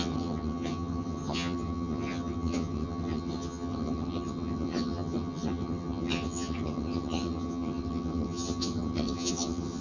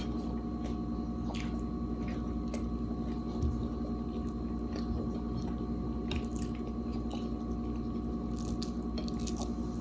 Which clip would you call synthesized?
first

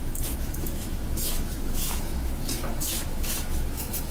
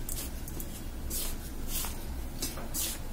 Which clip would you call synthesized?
first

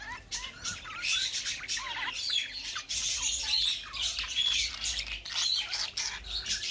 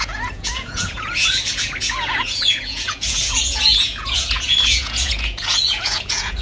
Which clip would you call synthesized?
second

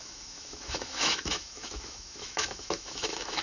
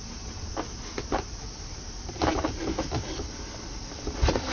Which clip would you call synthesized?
first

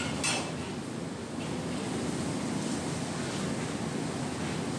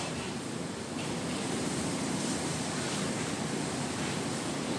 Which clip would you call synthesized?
second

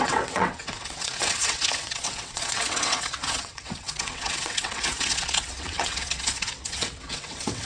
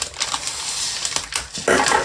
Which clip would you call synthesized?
first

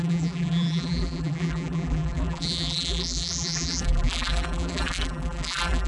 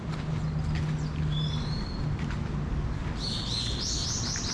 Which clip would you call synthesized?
first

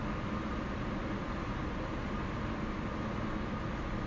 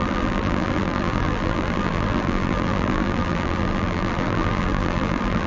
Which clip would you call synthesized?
second